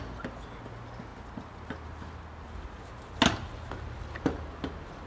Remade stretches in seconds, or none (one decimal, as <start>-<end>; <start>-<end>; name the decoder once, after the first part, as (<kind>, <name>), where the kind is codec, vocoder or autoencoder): none